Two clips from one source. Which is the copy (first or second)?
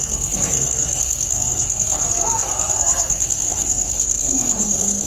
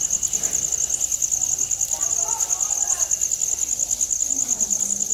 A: first